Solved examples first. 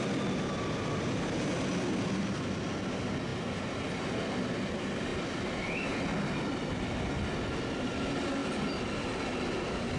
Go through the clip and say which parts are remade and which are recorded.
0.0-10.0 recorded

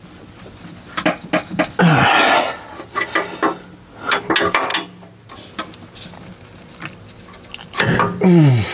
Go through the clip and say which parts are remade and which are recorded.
0.0-8.7 recorded

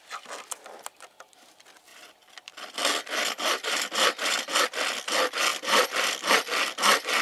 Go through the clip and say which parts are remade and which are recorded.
0.0-1.9 recorded; 1.9-3.7 remade; 3.7-5.5 recorded; 5.5-6.3 remade; 6.3-7.2 recorded

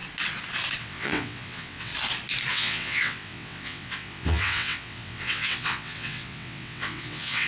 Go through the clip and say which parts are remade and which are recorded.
0.0-0.8 recorded; 0.8-1.9 remade; 1.9-2.5 recorded; 2.5-7.5 remade